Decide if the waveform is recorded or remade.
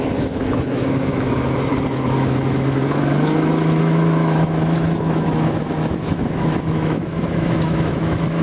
remade